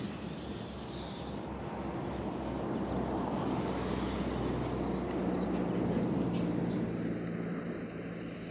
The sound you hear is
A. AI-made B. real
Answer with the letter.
B